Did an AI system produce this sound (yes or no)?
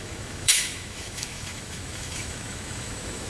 yes